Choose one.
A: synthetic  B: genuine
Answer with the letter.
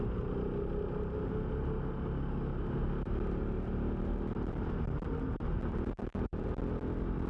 B